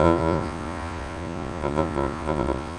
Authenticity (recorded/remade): remade